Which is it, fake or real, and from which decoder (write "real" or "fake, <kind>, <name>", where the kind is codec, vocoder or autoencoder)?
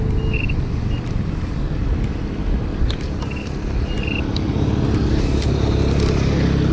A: real